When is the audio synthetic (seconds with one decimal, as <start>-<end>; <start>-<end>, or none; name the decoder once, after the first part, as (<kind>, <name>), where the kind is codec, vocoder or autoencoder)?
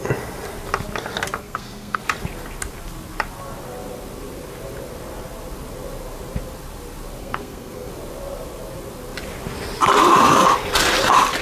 1.4-2.0 (codec, SNAC); 7.2-7.9